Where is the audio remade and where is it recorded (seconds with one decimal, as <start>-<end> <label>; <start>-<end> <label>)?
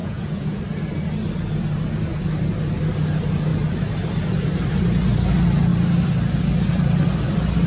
0.0-0.6 remade; 0.6-7.7 recorded